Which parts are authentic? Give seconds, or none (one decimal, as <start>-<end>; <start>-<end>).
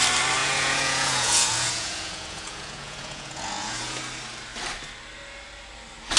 0.0-0.4; 4.0-6.2